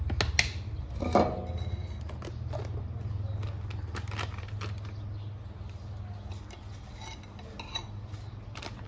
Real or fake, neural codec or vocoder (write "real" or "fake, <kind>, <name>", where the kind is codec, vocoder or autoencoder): real